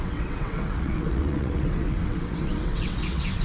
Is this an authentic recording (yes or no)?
no